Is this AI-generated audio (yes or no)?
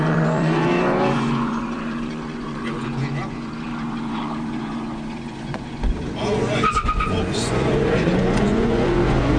yes